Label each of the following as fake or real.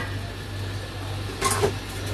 real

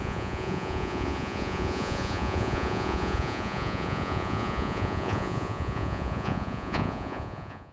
fake